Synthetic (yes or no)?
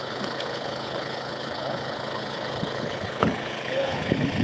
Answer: yes